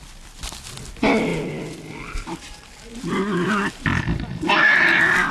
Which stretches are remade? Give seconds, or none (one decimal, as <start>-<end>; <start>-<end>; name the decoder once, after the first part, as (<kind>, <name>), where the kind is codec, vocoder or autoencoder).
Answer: none